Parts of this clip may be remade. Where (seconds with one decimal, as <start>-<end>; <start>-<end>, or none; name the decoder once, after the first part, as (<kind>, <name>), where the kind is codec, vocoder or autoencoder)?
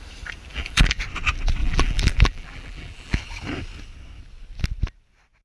0.5-1.0 (vocoder, BigVGAN v2); 1.6-3.2